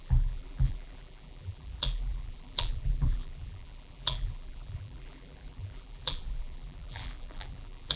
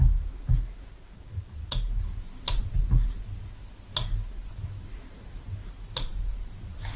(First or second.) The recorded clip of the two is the second